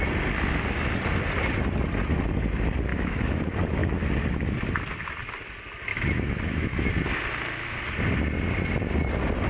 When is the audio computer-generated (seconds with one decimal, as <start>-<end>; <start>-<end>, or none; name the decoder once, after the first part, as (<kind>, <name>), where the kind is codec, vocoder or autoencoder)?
2.9-3.4 (autoencoder, DAC-VAE); 5.9-6.9